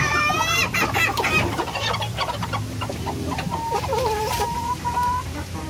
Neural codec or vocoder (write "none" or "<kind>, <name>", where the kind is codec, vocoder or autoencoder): vocoder, BigVGAN v2